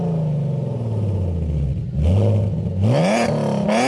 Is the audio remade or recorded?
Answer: recorded